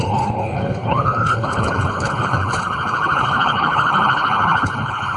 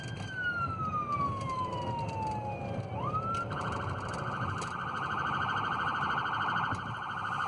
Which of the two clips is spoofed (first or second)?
first